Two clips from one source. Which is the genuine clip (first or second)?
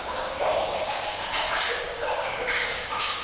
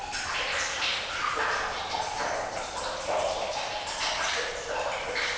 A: second